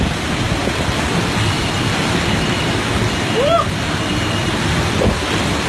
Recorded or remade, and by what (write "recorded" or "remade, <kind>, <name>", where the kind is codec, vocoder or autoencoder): recorded